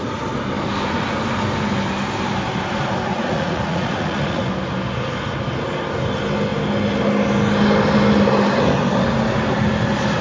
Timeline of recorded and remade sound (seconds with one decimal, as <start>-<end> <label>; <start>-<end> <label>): 0.0-3.1 recorded; 3.1-4.4 remade; 4.4-10.2 recorded